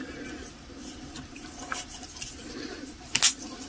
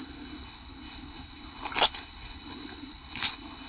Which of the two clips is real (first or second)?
first